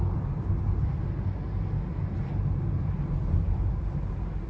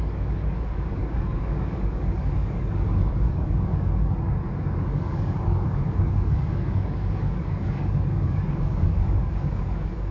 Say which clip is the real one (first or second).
first